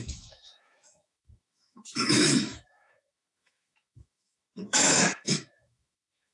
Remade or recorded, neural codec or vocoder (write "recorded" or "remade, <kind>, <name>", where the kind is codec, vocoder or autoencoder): remade, autoencoder, DAC-VAE